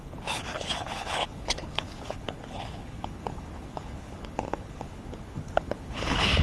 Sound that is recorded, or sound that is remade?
remade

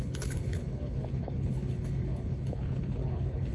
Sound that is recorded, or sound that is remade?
remade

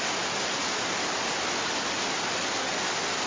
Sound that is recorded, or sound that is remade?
recorded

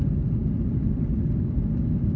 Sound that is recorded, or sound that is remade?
recorded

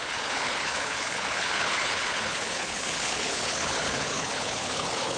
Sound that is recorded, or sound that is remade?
remade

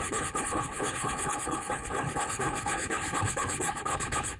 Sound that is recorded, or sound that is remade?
remade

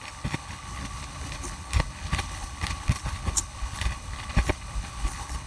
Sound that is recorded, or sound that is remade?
remade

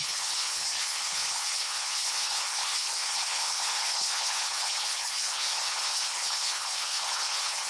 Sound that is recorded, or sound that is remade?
remade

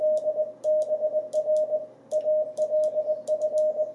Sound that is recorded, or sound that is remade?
recorded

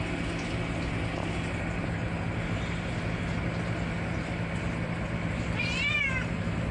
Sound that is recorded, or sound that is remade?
recorded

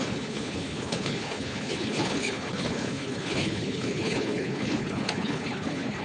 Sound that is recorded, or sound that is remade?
remade